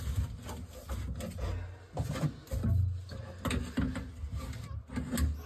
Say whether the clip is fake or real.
real